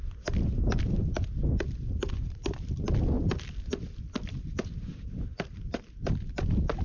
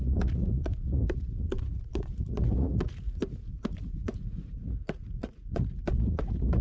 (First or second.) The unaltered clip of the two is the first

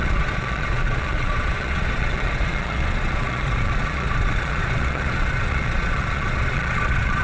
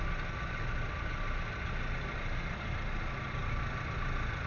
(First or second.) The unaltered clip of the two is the second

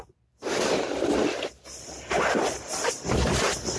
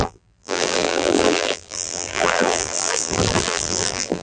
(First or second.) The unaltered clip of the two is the first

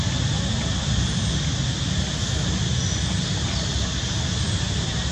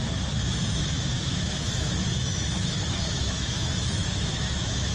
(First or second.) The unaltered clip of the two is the first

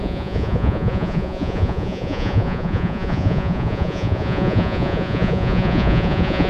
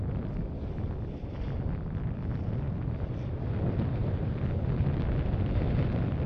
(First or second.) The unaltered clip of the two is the second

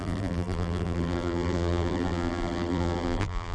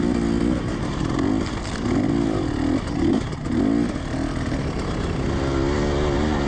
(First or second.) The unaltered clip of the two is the second